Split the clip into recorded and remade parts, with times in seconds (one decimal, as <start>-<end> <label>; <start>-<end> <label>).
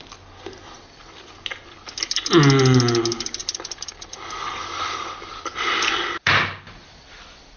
0.0-7.6 recorded